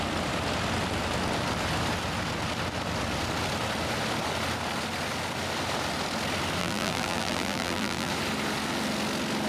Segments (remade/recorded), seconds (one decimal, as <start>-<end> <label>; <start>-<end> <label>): 0.0-6.6 recorded; 6.6-8.1 remade; 8.1-9.5 recorded